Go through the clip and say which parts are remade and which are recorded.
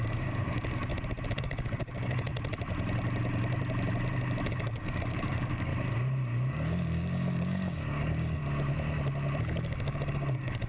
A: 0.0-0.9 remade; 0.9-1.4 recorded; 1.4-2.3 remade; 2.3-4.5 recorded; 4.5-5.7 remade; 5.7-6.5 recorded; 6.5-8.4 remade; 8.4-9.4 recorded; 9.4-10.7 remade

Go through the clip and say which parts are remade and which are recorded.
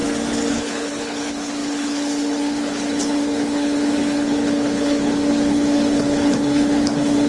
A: 0.0-0.5 recorded; 0.5-7.3 remade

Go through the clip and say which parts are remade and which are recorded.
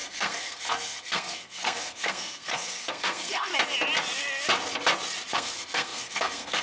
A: 0.0-3.5 remade; 3.5-5.3 recorded; 5.3-6.6 remade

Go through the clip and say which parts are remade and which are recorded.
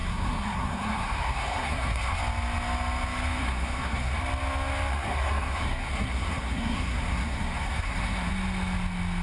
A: 0.0-2.2 remade; 2.2-3.4 recorded; 3.4-4.2 remade; 4.2-4.9 recorded; 4.9-8.3 remade; 8.3-9.2 recorded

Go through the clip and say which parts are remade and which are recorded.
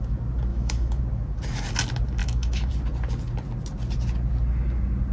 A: 0.0-0.5 recorded; 0.5-1.0 remade; 1.0-2.2 recorded; 2.2-2.7 remade; 2.7-5.1 recorded